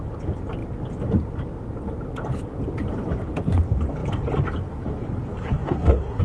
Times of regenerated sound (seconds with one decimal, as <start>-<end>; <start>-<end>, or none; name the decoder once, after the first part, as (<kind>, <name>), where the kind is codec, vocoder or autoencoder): 5.4-6.2 (codec, SNAC)